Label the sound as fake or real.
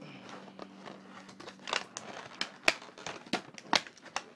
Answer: real